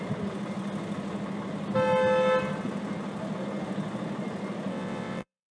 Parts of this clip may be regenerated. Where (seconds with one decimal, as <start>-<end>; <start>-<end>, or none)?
4.7-5.5